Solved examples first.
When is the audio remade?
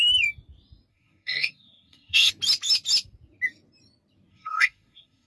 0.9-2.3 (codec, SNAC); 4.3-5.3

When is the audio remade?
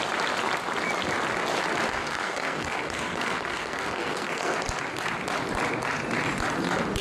1.9-4.6 (codec, SNAC)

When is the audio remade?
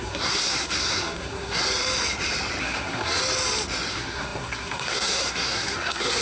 0.0-1.6 (codec, SNAC); 2.6-3.2; 3.9-6.2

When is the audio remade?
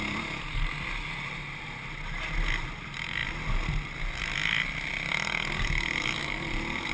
none